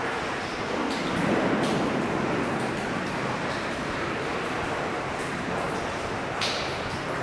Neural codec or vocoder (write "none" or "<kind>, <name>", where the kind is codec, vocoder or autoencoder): none